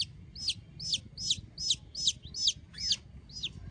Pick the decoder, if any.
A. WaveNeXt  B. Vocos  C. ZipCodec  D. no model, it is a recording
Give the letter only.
D